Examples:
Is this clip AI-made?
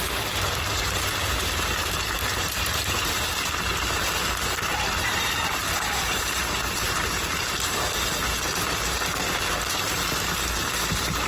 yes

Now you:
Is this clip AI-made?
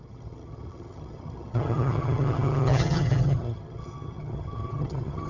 yes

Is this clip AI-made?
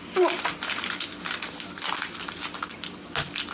no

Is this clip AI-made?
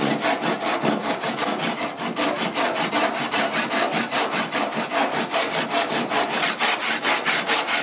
no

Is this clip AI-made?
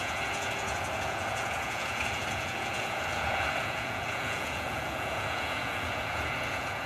yes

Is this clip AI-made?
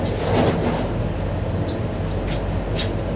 no